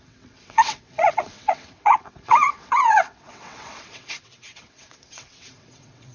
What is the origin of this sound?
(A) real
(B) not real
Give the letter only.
B